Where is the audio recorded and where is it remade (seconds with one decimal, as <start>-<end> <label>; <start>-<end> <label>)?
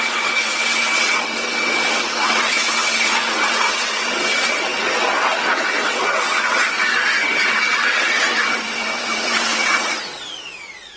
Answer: 0.0-11.0 remade